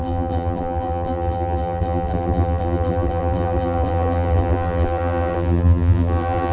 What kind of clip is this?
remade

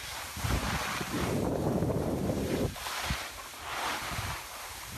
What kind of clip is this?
remade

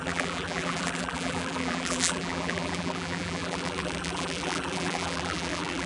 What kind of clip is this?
remade